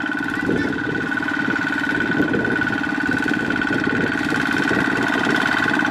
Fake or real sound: real